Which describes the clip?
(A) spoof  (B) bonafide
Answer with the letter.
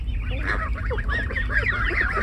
B